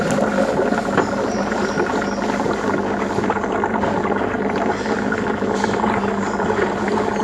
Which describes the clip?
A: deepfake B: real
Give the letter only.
B